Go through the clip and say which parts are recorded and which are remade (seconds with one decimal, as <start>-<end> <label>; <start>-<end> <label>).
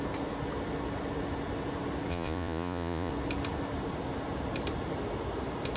0.0-2.1 recorded; 2.1-3.1 remade; 3.1-5.8 recorded